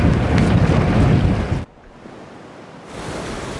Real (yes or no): yes